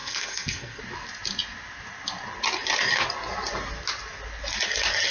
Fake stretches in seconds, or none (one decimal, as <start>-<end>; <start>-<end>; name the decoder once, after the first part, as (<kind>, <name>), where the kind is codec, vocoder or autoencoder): 0.0-0.8 (codec, SNAC)